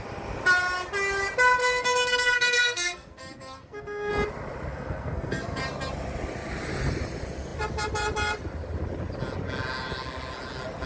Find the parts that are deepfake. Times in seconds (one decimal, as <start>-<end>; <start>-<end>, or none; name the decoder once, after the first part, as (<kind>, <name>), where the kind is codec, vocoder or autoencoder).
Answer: 1.6-4.1 (codec, SNAC); 4.7-5.6